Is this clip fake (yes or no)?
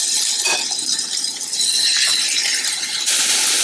no